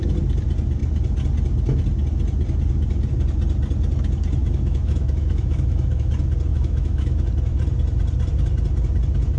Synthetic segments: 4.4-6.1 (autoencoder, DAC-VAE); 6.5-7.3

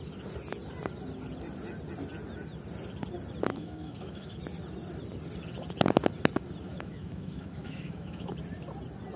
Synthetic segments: 3.5-4.4 (autoencoder, DAC-VAE); 6.7-8.3

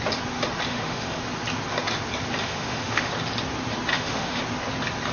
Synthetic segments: 0.7-1.2 (autoencoder, DAC-VAE); 2.4-3.1; 3.9-4.4

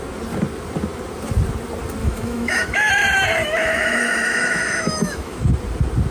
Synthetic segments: 2.0-2.9 (autoencoder, DAC-VAE); 3.4-5.5

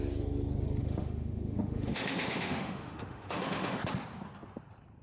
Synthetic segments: 0.8-3.8 (autoencoder, DAC-VAE)